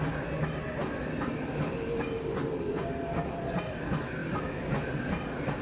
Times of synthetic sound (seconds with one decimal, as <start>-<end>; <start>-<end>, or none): none